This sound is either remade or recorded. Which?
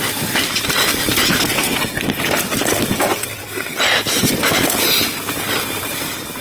recorded